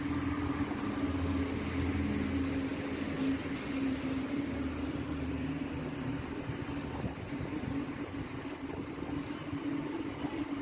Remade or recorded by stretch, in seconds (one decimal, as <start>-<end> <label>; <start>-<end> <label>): 0.0-10.6 recorded